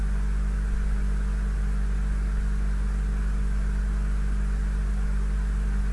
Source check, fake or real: real